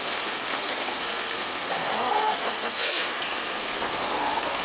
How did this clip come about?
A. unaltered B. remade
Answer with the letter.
B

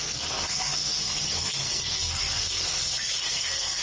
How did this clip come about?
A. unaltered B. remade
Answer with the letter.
B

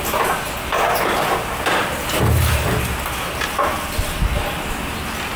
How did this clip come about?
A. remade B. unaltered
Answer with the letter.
B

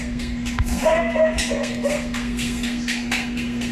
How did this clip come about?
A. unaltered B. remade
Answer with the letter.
B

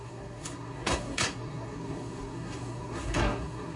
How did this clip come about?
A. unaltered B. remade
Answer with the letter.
B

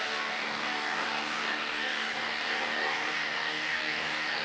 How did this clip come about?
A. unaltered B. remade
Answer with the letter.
B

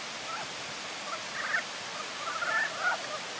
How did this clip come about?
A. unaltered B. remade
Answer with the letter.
A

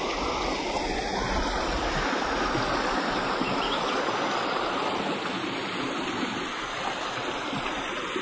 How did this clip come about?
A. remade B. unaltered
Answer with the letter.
B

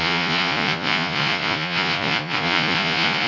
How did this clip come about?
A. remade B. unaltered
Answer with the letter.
A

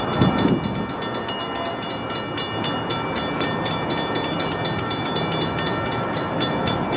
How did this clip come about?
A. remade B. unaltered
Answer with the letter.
B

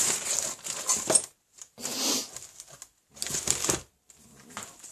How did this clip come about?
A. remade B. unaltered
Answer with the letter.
B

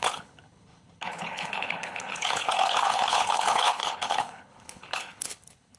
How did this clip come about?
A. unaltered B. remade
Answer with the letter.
B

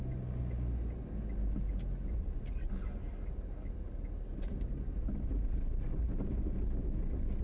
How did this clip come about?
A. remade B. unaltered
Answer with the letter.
B